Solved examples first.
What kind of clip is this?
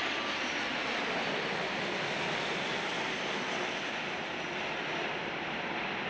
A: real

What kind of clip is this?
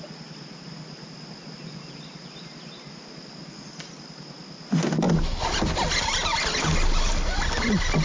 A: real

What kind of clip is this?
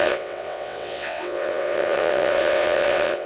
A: fake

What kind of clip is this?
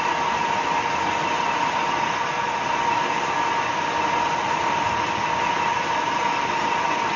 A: real